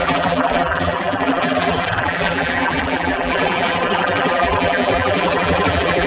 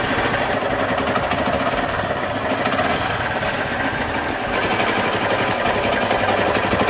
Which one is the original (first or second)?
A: second